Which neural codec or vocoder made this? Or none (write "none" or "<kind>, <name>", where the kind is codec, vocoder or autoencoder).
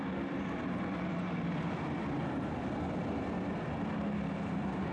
vocoder, BigVGAN v2